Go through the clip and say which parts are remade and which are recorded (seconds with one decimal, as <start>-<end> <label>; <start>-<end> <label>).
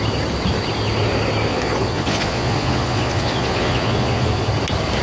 0.0-1.5 recorded; 1.5-4.5 remade; 4.5-5.0 recorded